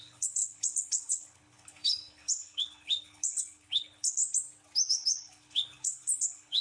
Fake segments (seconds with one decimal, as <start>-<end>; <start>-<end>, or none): 0.0-4.2; 4.9-6.6